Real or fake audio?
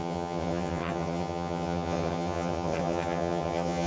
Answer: fake